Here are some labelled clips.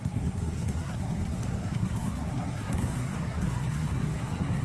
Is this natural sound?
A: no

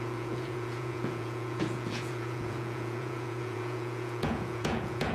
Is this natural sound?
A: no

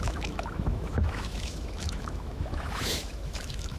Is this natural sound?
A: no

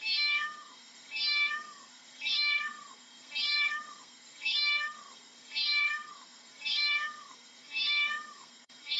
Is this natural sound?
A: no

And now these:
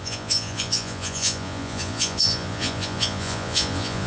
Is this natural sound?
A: no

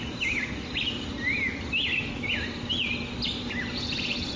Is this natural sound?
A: yes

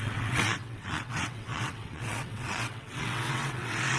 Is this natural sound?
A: no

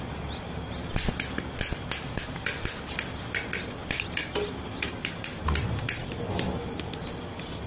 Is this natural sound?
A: yes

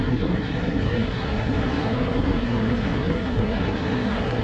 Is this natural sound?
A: no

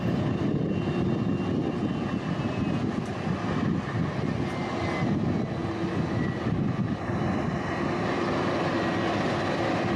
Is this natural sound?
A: yes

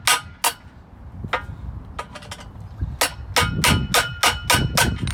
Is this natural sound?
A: yes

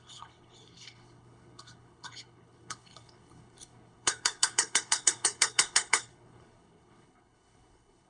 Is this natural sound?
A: no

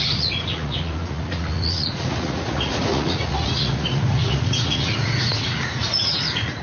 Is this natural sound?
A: no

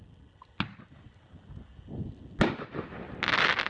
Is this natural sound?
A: yes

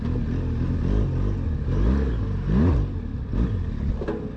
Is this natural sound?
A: yes